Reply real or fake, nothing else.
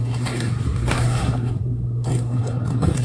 fake